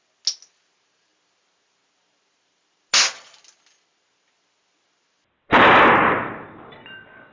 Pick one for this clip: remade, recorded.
recorded